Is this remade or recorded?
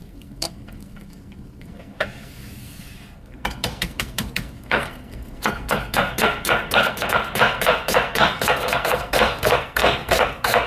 remade